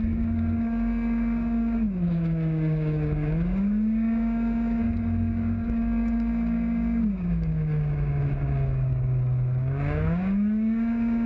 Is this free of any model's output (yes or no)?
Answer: no